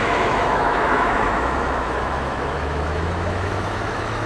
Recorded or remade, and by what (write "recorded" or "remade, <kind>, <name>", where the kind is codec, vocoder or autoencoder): remade, autoencoder, DAC-VAE